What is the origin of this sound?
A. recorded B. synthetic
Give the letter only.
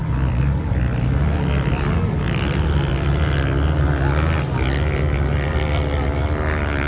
A